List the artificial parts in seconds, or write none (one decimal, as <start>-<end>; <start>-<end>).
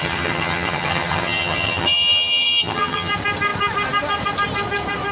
0.0-3.1